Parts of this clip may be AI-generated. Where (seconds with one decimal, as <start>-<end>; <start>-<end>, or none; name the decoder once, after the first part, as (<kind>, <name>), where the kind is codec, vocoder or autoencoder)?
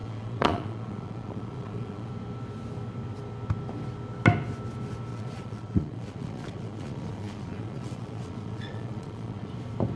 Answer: 0.0-2.1 (vocoder, Vocos); 5.1-9.5